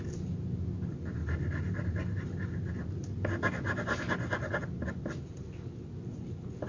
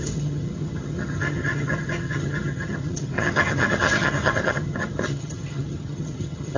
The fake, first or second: second